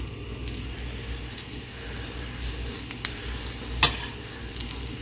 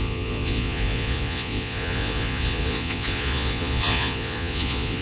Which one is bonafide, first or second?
first